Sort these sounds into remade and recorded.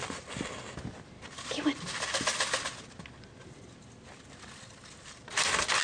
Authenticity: recorded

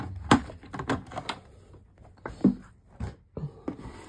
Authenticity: recorded